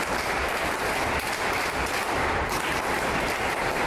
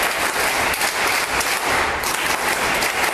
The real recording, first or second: second